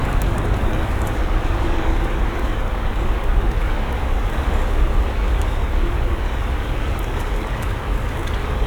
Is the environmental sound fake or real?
fake